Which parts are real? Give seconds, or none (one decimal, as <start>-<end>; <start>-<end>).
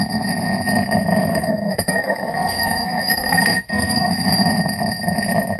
0.0-1.3; 4.1-5.6